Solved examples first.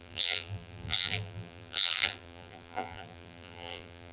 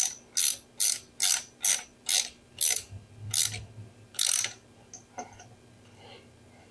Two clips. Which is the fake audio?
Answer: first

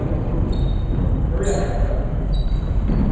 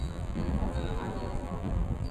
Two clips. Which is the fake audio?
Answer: second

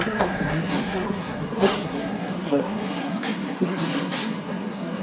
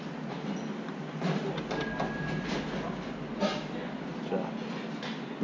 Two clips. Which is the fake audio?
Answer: first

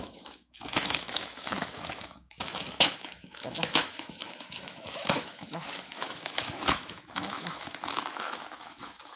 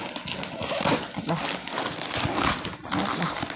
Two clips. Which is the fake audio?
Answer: first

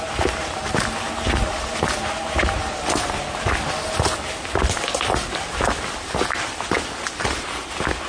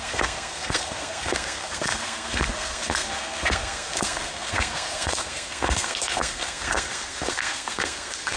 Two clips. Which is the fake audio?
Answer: second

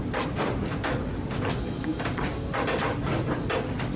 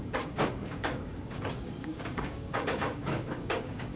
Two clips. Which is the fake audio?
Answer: second